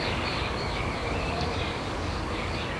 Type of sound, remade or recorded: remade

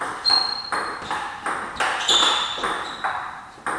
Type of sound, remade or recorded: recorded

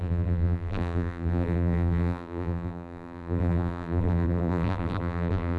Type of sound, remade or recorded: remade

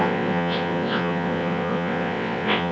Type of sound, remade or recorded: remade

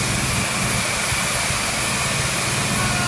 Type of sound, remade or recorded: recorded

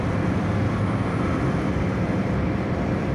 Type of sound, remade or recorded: remade